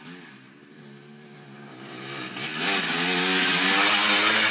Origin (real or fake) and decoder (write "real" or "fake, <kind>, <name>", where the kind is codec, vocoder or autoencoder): real